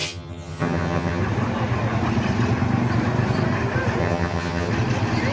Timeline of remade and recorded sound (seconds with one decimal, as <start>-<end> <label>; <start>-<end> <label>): 0.0-1.2 remade; 1.2-4.0 recorded; 4.0-4.7 remade; 4.7-5.3 recorded